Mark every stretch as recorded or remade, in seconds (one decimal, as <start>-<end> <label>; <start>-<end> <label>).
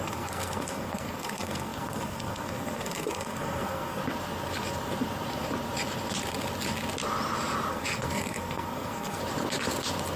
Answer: 0.0-4.0 remade; 4.0-7.7 recorded; 7.7-9.2 remade; 9.2-10.2 recorded